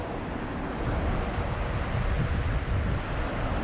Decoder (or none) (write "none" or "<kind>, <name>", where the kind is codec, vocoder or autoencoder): none